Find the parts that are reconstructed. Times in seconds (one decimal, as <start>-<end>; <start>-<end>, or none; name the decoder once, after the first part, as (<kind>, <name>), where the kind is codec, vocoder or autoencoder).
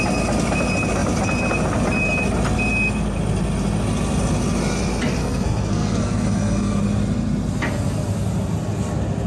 5.2-6.8 (codec, SNAC)